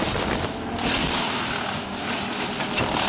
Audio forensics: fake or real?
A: real